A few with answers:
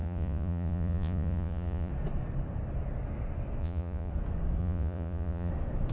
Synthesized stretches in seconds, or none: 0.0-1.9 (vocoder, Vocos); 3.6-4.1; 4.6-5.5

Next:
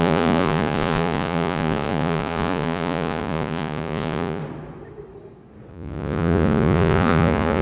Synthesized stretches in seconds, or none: 0.0-4.4 (vocoder, Vocos); 5.7-7.6

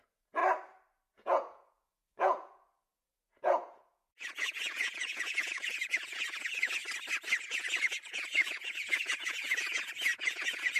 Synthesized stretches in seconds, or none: 0.0-0.4 (vocoder, Vocos); 1.1-6.8; 7.4-10.8